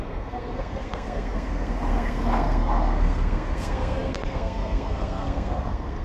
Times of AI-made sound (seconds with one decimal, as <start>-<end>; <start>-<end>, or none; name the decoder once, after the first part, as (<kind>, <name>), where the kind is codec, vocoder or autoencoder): 0.0-6.0 (codec, SNAC)